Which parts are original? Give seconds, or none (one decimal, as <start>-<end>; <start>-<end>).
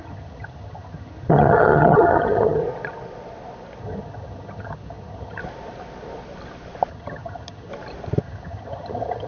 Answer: 2.6-3.8; 5.4-6.9; 7.7-8.2